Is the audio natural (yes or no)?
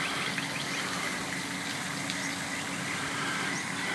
no